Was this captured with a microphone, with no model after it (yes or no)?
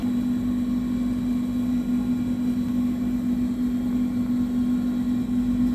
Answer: yes